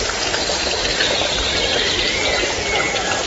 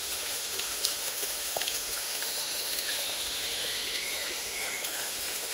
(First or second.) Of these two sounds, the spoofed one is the second